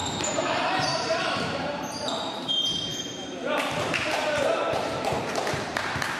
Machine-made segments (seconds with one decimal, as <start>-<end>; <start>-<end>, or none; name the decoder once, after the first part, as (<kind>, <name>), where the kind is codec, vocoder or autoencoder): 0.0-2.9 (vocoder, BigVGAN v2); 3.8-6.2